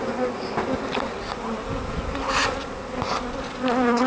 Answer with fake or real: real